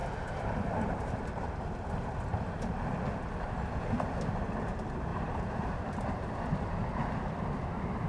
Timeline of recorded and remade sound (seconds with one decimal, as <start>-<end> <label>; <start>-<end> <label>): 0.0-1.9 remade; 1.9-2.3 recorded; 2.3-3.0 remade; 3.0-5.1 recorded; 5.1-6.3 remade; 6.3-8.1 recorded